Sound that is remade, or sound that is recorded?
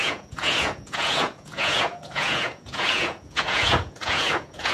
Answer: remade